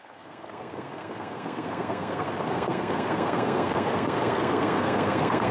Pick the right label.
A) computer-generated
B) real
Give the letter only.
A